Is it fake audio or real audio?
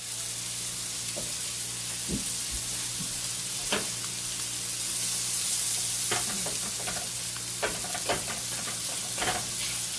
real